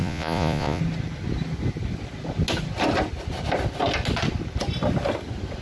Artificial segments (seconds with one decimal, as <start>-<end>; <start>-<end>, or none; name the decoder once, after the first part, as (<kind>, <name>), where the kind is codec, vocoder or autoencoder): 0.0-0.8 (vocoder, Vocos)